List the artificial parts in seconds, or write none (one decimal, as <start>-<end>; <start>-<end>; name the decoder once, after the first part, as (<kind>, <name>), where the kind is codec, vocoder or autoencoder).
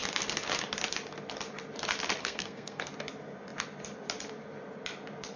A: 2.2-2.9 (codec, SNAC)